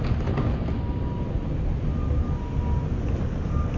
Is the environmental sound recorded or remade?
recorded